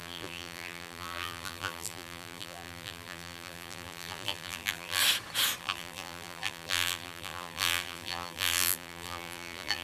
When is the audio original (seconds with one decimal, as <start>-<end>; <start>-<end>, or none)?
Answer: 5.0-5.6